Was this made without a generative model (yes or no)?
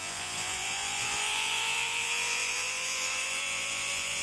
no